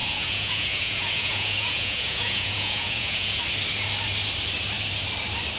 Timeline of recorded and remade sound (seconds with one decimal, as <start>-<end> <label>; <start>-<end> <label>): 0.0-3.4 remade; 3.4-5.6 recorded

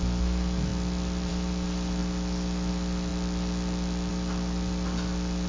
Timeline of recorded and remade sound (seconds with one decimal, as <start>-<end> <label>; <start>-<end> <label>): 0.0-5.5 recorded